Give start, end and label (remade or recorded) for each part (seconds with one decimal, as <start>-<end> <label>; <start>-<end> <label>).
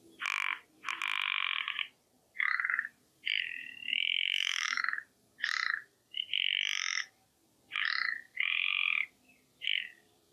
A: 0.0-3.9 recorded; 3.9-4.8 remade; 4.8-10.3 recorded